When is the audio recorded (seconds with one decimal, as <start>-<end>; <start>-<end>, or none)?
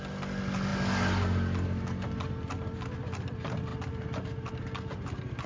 0.0-5.5